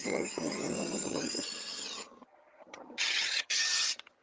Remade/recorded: remade